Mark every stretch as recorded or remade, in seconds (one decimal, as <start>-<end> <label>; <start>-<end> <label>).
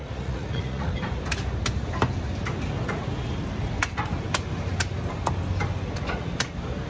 0.0-0.9 remade; 0.9-6.9 recorded